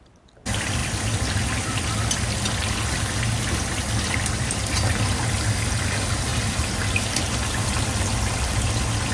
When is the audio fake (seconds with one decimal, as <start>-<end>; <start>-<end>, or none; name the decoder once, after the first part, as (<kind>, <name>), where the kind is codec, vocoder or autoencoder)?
none